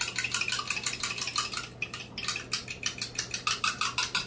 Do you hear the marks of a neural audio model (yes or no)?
no